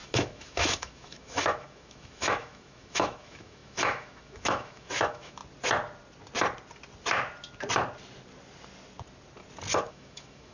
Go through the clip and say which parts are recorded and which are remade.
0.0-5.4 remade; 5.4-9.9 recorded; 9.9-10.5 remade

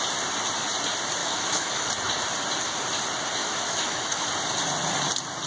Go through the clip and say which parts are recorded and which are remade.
0.0-1.2 recorded; 1.2-1.9 remade; 1.9-3.4 recorded; 3.4-4.3 remade; 4.3-5.5 recorded

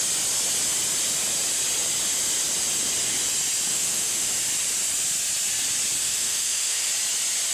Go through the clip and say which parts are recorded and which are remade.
0.0-3.7 recorded; 3.7-4.3 remade; 4.3-6.0 recorded; 6.0-6.9 remade; 6.9-7.5 recorded

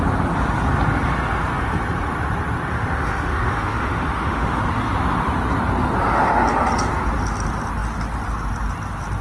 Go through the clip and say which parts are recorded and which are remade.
0.0-2.7 recorded; 2.7-4.6 remade; 4.6-9.2 recorded

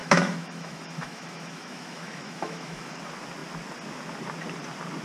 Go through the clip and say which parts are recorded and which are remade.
0.0-3.0 remade; 3.0-5.0 recorded